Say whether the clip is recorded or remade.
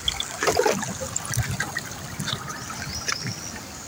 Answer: recorded